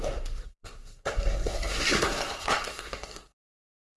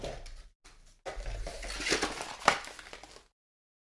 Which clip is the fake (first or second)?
first